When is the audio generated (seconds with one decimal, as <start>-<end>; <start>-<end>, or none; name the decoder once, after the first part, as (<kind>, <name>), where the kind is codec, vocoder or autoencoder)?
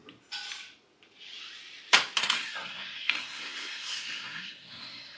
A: 2.2-5.2 (codec, SNAC)